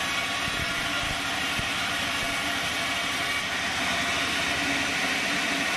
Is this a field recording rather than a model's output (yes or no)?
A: yes